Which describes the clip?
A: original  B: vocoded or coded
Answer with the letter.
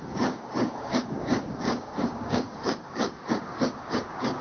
B